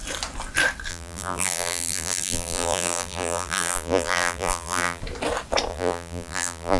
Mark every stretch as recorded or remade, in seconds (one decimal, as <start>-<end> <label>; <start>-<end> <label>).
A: 0.0-0.9 recorded; 0.9-5.0 remade; 5.0-5.7 recorded; 5.7-6.8 remade